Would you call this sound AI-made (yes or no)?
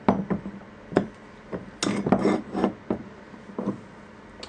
no